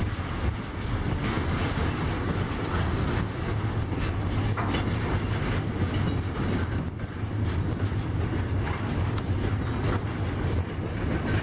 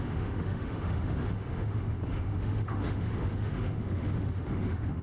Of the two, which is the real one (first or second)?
first